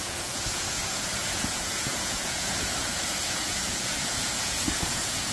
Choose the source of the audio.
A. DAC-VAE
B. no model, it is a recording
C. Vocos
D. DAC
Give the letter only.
C